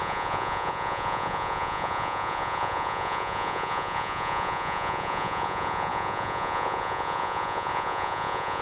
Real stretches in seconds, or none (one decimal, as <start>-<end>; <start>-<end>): none